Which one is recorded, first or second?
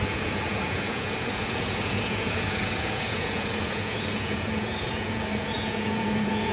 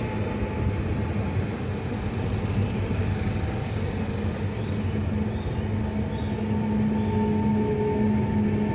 second